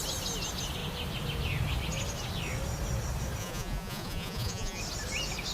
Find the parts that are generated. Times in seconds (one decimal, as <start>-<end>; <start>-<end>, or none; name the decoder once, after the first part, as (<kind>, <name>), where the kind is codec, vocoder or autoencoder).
3.4-4.8 (vocoder, Vocos)